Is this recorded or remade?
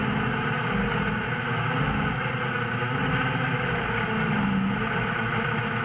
recorded